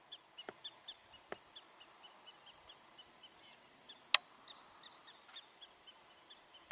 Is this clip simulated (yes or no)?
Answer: no